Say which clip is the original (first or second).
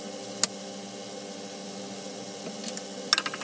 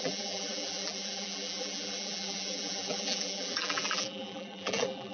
first